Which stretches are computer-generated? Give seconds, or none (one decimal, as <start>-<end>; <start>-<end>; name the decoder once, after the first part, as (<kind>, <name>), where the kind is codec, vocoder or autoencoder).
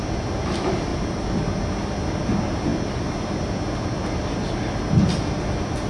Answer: none